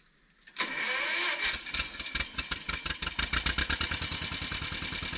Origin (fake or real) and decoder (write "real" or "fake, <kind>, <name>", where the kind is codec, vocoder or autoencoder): real